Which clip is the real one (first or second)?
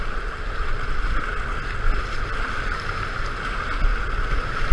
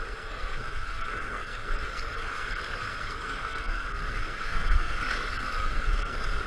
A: first